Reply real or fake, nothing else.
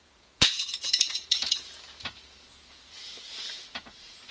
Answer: fake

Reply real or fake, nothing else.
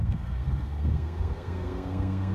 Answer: fake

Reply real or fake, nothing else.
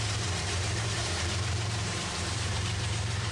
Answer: fake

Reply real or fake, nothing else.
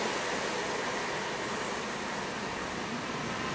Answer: real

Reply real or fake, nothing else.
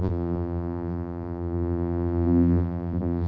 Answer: fake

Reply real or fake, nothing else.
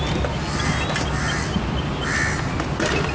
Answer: real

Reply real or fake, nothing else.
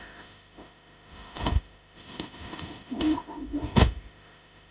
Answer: fake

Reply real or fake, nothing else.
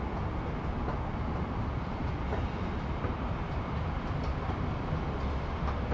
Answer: real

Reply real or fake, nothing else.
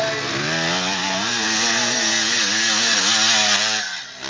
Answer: real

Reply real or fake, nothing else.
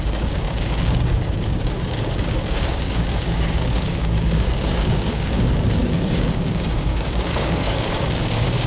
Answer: fake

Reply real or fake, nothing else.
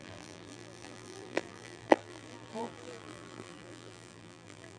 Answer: fake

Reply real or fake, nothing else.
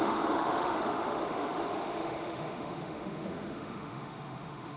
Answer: fake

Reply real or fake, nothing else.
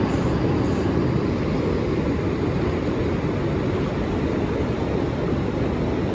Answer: real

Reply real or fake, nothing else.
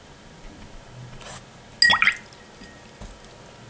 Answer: real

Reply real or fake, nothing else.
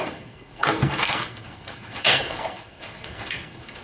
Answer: fake